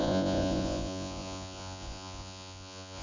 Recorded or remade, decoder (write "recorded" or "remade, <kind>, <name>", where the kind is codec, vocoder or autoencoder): remade, vocoder, Vocos